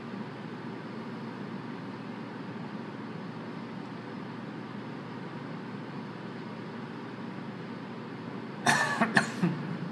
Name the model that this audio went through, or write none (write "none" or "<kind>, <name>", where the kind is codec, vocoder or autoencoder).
none